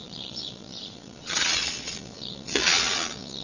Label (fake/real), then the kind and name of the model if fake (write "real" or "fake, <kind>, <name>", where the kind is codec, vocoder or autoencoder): fake, vocoder, Vocos